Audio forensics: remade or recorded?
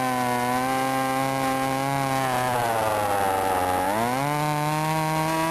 recorded